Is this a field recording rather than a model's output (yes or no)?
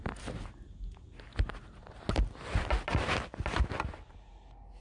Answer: yes